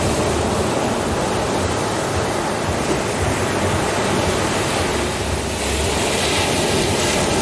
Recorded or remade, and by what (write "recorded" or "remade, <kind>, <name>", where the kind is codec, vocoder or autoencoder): recorded